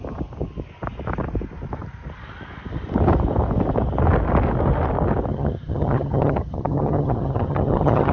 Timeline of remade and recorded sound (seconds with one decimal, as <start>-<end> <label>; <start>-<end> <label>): 0.0-5.3 recorded; 5.3-8.1 remade

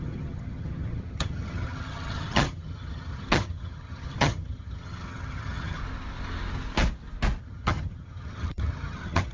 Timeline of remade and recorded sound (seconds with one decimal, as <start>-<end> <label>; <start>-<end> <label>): 0.0-5.8 remade; 5.8-7.4 recorded; 7.4-9.3 remade

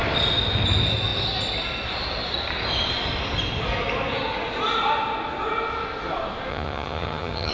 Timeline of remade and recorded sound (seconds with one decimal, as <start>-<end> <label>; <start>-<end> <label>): 0.0-6.5 recorded; 6.5-7.5 remade

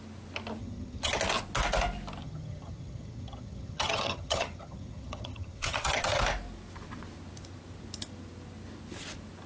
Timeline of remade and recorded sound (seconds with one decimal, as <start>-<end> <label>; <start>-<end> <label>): 0.0-0.6 recorded; 0.6-1.2 remade; 1.2-2.2 recorded; 2.2-6.2 remade; 6.2-9.5 recorded

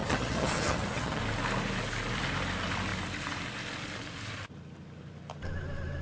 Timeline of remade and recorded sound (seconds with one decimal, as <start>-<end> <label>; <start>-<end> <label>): 0.0-1.2 remade; 1.2-6.0 recorded